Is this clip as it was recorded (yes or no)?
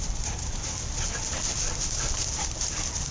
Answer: yes